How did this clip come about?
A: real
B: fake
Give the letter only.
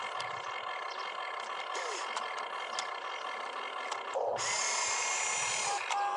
A